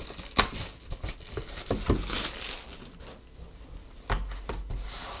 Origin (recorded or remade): recorded